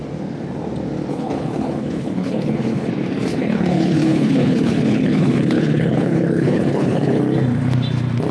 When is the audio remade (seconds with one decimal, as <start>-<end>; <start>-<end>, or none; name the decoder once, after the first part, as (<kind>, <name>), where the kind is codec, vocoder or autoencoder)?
1.1-2.9 (codec, HILCodec); 3.3-7.2